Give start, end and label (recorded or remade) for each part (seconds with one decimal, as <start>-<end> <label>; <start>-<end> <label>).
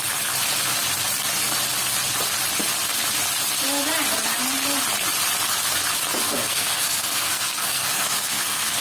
0.0-6.1 recorded; 6.1-8.8 remade